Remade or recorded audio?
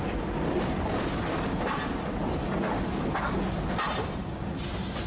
recorded